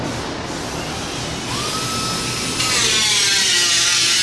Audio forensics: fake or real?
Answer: real